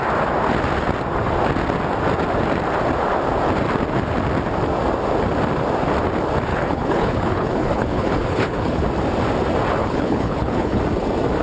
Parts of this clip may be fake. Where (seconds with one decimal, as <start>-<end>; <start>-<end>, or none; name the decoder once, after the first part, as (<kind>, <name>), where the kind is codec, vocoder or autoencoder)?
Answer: 6.5-8.8 (codec, HILCodec); 9.8-10.8